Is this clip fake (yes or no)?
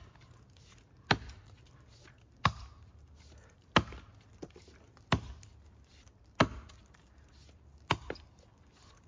no